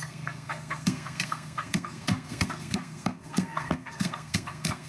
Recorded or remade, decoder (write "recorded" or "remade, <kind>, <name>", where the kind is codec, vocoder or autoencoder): remade, codec, SNAC